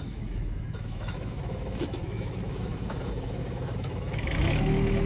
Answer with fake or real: fake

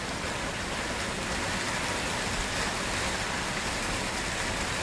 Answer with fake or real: real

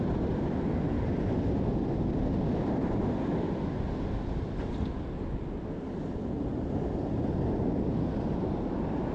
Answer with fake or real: real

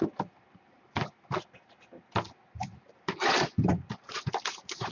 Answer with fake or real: real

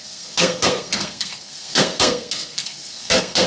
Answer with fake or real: fake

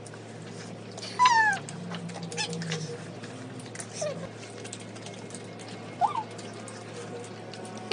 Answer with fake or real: real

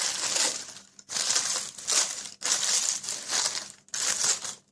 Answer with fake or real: real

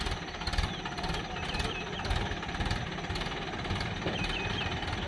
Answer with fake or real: fake